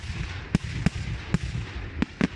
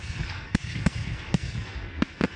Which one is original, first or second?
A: first